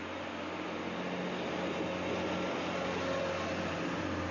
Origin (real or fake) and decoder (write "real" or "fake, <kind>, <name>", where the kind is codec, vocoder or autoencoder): real